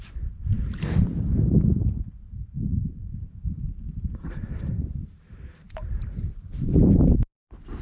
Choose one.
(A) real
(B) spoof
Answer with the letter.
B